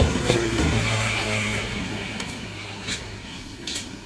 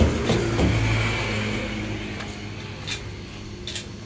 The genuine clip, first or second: second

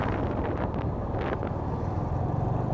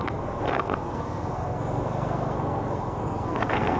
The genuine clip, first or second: first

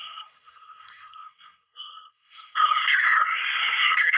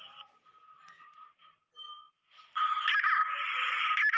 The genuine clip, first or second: second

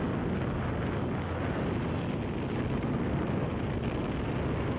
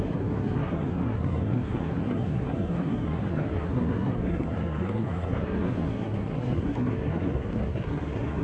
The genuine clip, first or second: first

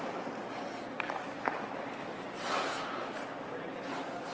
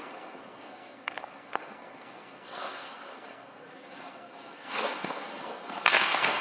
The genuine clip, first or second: first